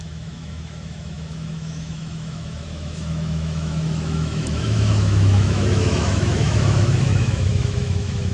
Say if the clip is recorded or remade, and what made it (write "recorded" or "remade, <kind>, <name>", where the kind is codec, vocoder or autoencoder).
remade, autoencoder, DAC-VAE